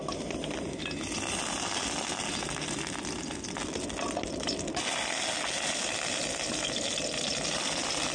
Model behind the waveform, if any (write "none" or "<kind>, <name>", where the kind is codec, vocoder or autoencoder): none